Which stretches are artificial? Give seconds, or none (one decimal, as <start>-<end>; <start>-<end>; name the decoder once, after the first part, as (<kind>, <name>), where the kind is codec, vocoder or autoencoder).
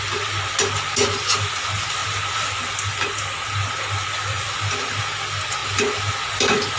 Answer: 2.0-5.0 (vocoder, BigVGAN v2)